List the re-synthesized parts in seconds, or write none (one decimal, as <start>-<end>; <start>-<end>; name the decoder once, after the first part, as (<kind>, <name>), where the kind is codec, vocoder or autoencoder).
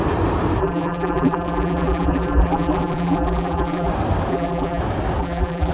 0.6-3.9 (vocoder, BigVGAN v2); 4.3-4.8; 5.2-5.7